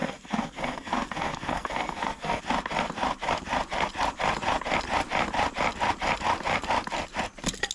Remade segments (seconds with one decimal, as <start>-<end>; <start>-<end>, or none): 0.0-2.4